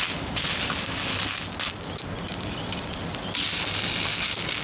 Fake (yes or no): no